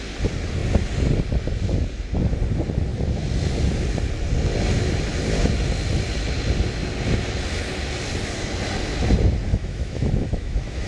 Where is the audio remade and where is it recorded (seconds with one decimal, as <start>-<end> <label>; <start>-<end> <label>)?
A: 0.0-9.5 recorded; 9.5-10.9 remade